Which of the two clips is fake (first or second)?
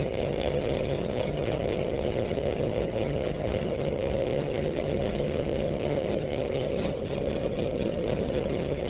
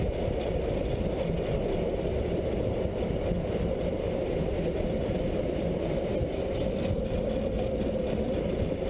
first